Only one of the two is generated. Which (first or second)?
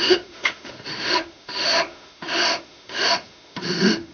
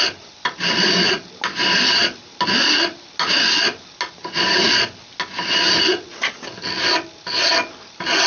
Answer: first